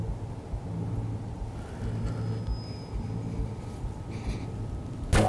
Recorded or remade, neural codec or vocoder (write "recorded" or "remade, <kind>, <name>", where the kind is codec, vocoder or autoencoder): recorded